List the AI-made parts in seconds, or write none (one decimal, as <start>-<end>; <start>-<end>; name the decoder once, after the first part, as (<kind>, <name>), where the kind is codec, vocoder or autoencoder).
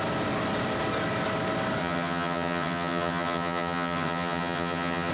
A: 1.8-5.1 (vocoder, HiFi-GAN)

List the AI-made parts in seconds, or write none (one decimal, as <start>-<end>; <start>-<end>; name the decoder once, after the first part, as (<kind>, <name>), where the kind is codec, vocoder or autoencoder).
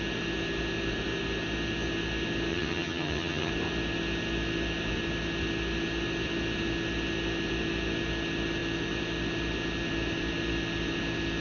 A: 2.5-3.5 (vocoder, HiFi-GAN)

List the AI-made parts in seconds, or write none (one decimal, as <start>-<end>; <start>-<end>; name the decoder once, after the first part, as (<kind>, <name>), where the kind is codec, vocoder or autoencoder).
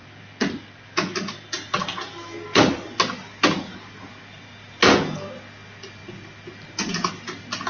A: none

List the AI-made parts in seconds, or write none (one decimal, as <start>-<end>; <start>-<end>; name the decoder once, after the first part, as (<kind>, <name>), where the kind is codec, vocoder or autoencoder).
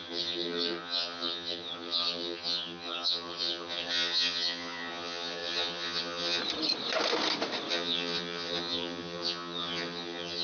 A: 0.0-6.4 (vocoder, HiFi-GAN); 7.7-10.4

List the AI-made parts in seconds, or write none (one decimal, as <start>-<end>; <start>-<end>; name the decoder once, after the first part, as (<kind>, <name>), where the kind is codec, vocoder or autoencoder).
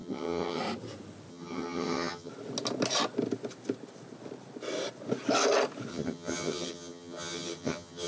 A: 0.0-0.6 (vocoder, HiFi-GAN); 1.3-2.3; 5.9-8.1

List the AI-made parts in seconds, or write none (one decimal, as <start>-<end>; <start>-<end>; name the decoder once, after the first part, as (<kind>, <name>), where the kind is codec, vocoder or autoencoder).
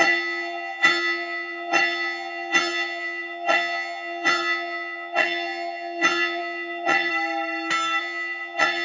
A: 0.0-7.1 (vocoder, HiFi-GAN); 8.0-8.8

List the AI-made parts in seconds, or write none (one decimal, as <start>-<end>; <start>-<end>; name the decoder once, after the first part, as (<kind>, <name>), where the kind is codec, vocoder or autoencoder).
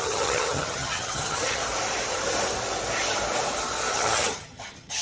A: 0.0-1.6 (vocoder, HiFi-GAN); 3.9-5.0